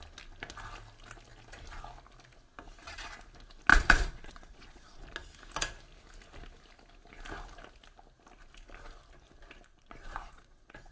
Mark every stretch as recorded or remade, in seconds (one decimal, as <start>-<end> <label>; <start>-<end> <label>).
0.0-3.7 recorded; 3.7-5.0 remade; 5.0-9.7 recorded; 9.7-10.9 remade